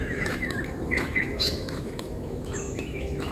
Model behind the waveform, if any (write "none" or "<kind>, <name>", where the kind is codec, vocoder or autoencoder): autoencoder, DAC-VAE